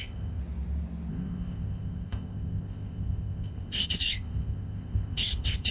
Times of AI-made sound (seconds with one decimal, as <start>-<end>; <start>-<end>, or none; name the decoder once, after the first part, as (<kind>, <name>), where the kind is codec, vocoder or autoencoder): 0.0-0.4 (codec, ZipCodec); 1.1-5.7